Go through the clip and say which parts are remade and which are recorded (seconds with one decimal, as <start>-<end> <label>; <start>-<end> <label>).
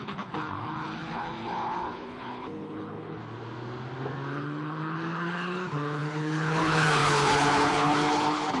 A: 0.0-3.2 remade; 3.2-4.3 recorded; 4.3-8.6 remade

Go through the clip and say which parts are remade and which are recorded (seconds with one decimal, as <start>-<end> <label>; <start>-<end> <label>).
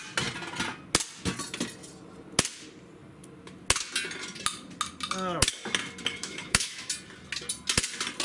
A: 0.0-6.2 recorded; 6.2-6.9 remade; 6.9-8.2 recorded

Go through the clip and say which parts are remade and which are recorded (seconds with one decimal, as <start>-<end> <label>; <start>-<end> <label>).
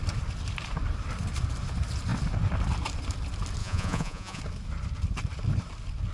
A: 0.0-3.6 recorded; 3.6-4.4 remade; 4.4-6.1 recorded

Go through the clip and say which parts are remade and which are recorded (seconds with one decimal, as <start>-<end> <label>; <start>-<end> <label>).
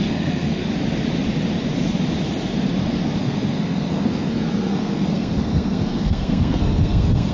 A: 0.0-0.6 remade; 0.6-3.2 recorded; 3.2-7.3 remade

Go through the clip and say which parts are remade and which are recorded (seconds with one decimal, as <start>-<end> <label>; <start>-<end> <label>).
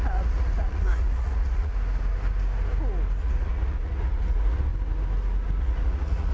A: 0.0-1.7 remade; 1.7-3.2 recorded; 3.2-4.7 remade; 4.7-5.6 recorded; 5.6-6.3 remade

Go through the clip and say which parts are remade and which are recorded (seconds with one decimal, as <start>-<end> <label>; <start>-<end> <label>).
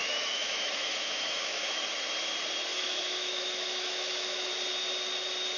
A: 0.0-1.8 remade; 1.8-2.7 recorded; 2.7-4.5 remade; 4.5-5.6 recorded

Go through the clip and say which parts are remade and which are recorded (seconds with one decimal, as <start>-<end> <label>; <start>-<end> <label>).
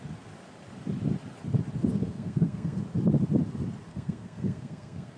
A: 0.0-1.9 recorded; 1.9-2.8 remade; 2.8-3.9 recorded; 3.9-5.2 remade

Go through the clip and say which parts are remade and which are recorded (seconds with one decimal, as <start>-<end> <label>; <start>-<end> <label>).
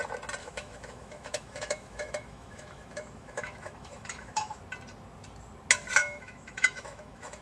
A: 0.0-0.4 recorded; 0.4-4.6 remade; 4.6-6.0 recorded; 6.0-7.4 remade